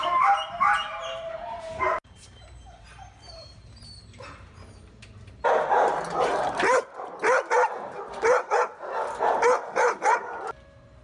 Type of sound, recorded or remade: remade